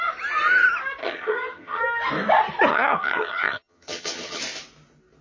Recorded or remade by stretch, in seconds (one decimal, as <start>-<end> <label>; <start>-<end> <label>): 0.0-1.0 recorded; 1.0-1.8 remade; 1.8-2.7 recorded; 2.7-4.4 remade; 4.4-5.2 recorded